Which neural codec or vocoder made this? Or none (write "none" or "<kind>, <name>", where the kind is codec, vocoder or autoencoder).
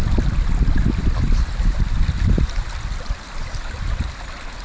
none